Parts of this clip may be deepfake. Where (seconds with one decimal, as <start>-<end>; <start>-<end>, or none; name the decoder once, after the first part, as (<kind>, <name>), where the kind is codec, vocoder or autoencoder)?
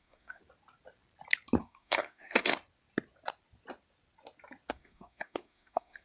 0.0-0.4 (codec, SNAC); 1.6-2.5; 4.7-6.0